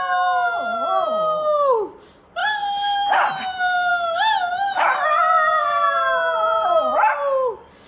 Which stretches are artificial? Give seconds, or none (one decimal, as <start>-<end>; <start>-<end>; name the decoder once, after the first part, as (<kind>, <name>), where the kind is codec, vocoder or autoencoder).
4.5-7.2 (vocoder, BigVGAN v2)